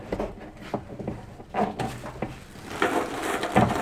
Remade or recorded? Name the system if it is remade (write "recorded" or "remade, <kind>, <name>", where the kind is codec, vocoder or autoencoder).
recorded